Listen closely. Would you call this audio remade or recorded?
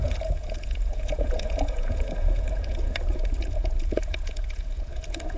remade